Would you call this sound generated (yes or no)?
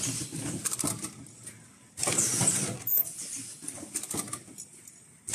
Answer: no